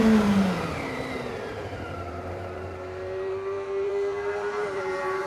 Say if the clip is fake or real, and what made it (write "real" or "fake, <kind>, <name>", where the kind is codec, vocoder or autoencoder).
fake, vocoder, BigVGAN v2